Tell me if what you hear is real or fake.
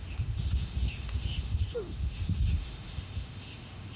fake